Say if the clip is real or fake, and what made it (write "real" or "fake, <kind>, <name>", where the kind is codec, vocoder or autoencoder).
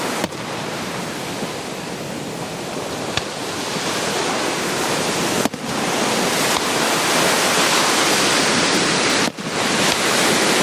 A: fake, vocoder, BigVGAN v2